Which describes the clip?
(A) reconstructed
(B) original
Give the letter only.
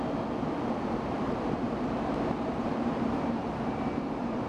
A